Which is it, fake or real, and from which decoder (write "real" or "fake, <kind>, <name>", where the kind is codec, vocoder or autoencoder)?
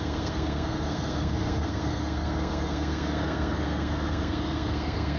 fake, codec, SNAC